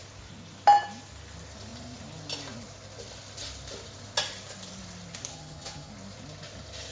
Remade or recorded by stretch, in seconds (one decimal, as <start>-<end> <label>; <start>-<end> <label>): 0.0-5.3 recorded; 5.3-5.9 remade; 5.9-6.9 recorded